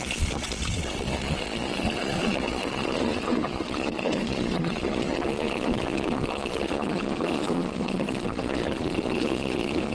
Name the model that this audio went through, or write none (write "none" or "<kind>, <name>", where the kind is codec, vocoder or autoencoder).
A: vocoder, Vocos